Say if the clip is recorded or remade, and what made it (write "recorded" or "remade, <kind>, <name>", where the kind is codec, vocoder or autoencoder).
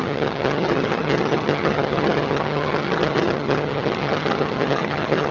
remade, vocoder, HiFi-GAN